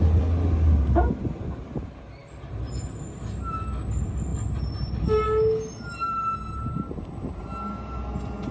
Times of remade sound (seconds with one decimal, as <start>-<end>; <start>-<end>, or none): none